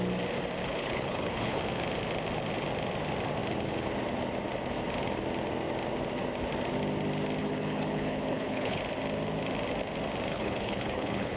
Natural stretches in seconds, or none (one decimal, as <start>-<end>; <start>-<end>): 0.0-0.6; 1.6-7.4; 8.8-10.3